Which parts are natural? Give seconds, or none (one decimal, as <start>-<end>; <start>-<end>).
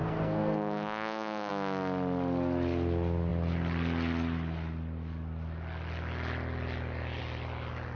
1.5-8.0